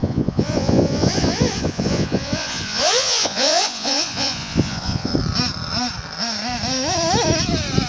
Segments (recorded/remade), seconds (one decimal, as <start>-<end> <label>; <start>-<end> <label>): 0.0-5.1 remade; 5.1-7.9 recorded